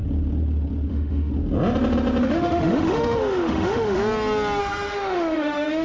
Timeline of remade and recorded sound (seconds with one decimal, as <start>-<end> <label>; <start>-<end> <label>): 0.0-0.9 recorded; 0.9-1.3 remade; 1.3-2.2 recorded; 2.2-4.0 remade; 4.0-4.6 recorded; 4.6-5.8 remade